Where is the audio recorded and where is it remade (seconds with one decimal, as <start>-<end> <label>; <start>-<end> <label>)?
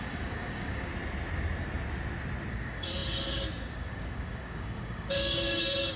0.0-0.9 remade; 0.9-2.5 recorded; 2.5-6.0 remade